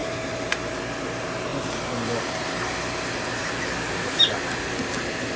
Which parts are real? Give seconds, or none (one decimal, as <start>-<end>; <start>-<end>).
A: 0.8-5.4